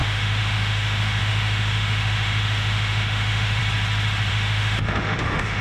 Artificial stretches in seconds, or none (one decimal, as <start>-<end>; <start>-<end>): 0.0-3.6; 4.3-5.6